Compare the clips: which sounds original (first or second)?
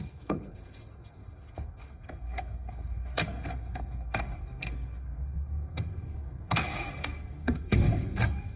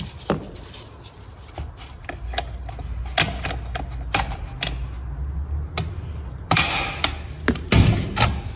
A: second